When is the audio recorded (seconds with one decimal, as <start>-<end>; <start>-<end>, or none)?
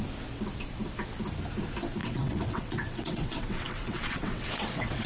0.0-2.0